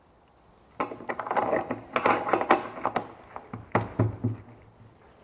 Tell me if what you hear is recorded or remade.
recorded